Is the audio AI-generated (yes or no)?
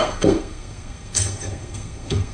yes